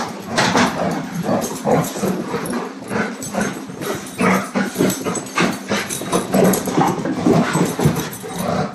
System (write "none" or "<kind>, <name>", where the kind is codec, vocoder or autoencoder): vocoder, BigVGAN v2